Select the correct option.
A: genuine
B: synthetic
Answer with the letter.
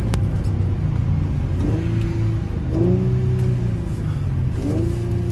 A